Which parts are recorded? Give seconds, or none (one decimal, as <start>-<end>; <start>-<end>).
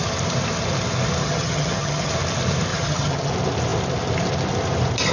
0.0-1.2; 2.1-2.7; 3.3-5.1